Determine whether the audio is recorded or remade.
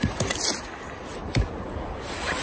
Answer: recorded